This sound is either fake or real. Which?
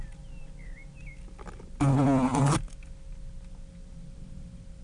real